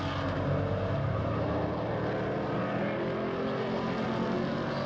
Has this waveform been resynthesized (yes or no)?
no